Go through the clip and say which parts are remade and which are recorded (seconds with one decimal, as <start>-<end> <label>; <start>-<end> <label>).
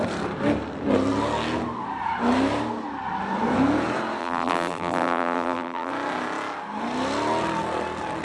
0.0-4.2 recorded; 4.2-5.9 remade; 5.9-8.2 recorded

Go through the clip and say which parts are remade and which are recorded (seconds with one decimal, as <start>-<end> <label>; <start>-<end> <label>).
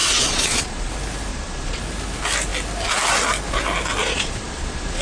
0.0-0.9 remade; 0.9-1.3 recorded; 1.3-1.8 remade; 1.8-4.0 recorded; 4.0-5.0 remade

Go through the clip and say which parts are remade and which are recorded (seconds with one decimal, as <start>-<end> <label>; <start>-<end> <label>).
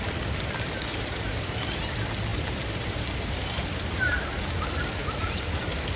0.0-0.9 recorded; 0.9-1.8 remade; 1.8-2.3 recorded; 2.3-4.2 remade; 4.2-5.0 recorded; 5.0-5.6 remade; 5.6-6.0 recorded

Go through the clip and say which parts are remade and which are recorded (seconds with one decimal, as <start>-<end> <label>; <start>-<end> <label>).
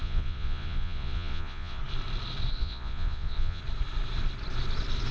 0.0-1.8 remade; 1.8-2.6 recorded; 2.6-3.6 remade; 3.6-5.1 recorded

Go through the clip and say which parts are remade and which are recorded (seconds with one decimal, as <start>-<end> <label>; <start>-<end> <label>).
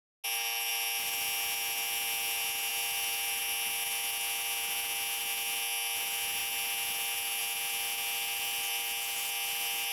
0.0-9.9 recorded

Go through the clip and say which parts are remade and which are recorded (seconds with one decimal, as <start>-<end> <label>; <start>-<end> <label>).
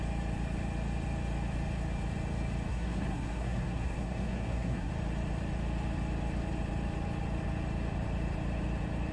0.0-2.7 recorded; 2.7-4.9 remade; 4.9-9.1 recorded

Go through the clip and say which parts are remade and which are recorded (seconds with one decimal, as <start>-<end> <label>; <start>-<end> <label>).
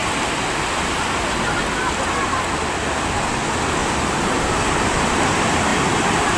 0.0-3.8 recorded; 3.8-4.4 remade; 4.4-5.7 recorded; 5.7-6.4 remade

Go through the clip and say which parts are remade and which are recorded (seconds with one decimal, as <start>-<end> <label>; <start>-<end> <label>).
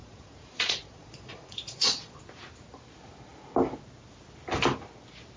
0.0-2.2 remade; 2.2-5.4 recorded